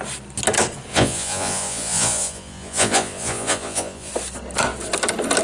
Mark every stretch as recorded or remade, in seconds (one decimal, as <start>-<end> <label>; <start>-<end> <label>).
0.0-0.9 recorded; 0.9-4.1 remade; 4.1-5.4 recorded